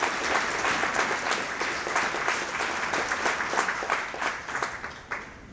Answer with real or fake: real